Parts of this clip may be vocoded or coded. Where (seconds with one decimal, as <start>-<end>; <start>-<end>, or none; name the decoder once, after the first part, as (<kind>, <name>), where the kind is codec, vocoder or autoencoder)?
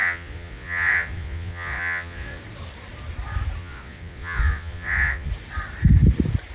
0.0-2.4 (vocoder, Vocos); 3.6-5.3